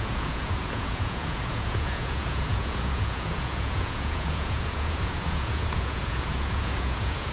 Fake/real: fake